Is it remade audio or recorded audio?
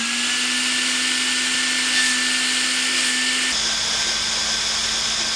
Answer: recorded